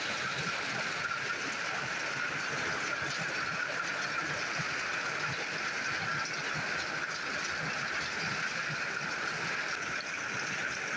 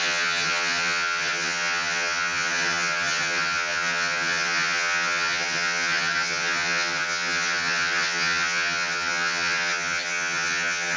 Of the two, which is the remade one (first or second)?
second